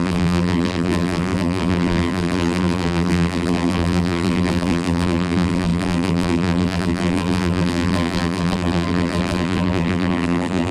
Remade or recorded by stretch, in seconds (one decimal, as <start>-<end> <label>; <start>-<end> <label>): 0.0-10.7 remade